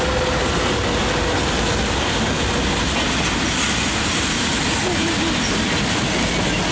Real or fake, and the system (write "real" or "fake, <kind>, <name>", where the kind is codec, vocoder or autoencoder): real